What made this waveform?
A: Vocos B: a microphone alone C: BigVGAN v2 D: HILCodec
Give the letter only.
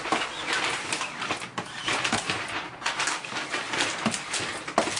B